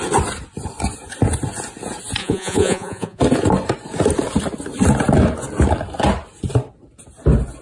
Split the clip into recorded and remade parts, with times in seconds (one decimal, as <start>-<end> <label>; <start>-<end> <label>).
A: 0.0-2.2 recorded; 2.2-3.2 remade; 3.2-7.6 recorded